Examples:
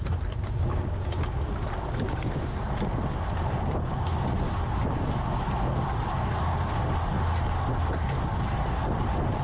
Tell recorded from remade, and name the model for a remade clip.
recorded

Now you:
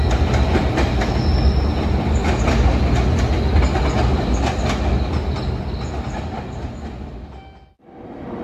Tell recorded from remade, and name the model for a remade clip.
recorded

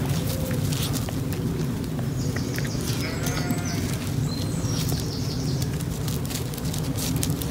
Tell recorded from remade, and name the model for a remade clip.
recorded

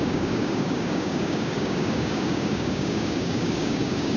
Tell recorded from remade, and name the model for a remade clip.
remade, codec, DAC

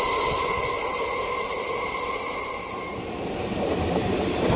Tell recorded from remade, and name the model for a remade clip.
remade, vocoder, BigVGAN v2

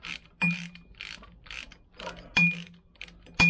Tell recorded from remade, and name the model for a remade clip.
recorded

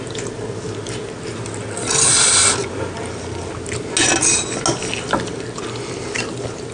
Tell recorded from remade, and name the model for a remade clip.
recorded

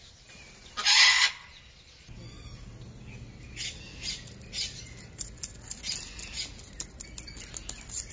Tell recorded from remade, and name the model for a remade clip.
recorded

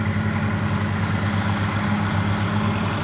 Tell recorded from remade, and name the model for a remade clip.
recorded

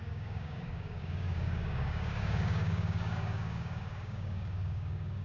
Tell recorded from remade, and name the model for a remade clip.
remade, codec, DAC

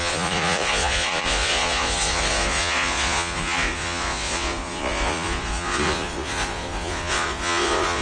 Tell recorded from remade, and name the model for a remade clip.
remade, vocoder, Vocos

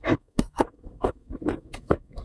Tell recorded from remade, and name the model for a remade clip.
remade, codec, SNAC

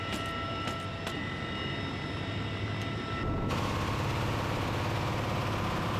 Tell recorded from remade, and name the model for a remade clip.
recorded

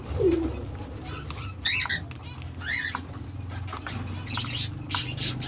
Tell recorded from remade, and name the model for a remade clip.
recorded